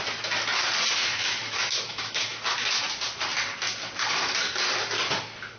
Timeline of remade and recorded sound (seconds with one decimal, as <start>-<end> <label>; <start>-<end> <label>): 0.0-1.0 recorded; 1.0-2.7 remade; 2.7-5.6 recorded